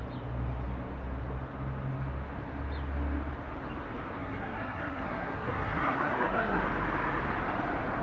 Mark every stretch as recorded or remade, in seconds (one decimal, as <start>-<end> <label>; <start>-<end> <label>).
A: 0.0-4.2 recorded; 4.2-6.6 remade; 6.6-8.0 recorded